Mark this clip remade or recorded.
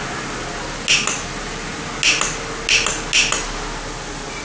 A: recorded